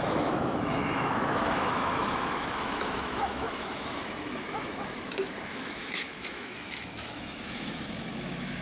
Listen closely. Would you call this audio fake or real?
fake